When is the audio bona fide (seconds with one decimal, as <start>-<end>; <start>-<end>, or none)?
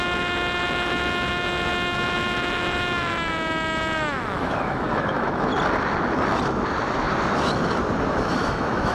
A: 5.5-8.1